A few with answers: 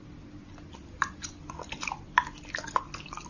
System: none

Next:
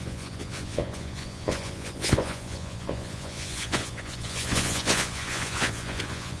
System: vocoder, Vocos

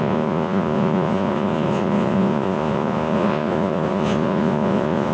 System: vocoder, Vocos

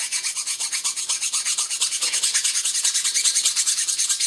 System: vocoder, Vocos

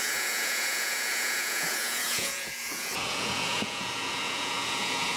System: vocoder, Vocos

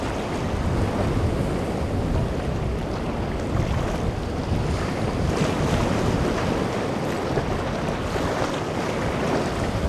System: none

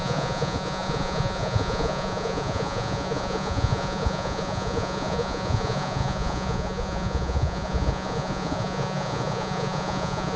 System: vocoder, Vocos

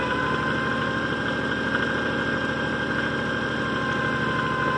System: none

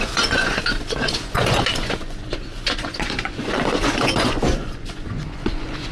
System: vocoder, Vocos